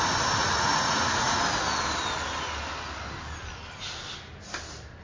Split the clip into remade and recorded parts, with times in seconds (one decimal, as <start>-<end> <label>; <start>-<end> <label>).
0.0-0.4 recorded; 0.4-1.4 remade; 1.4-5.0 recorded